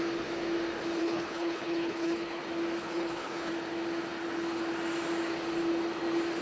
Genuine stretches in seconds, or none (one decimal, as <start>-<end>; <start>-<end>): 0.0-1.0; 2.4-2.8; 3.5-6.4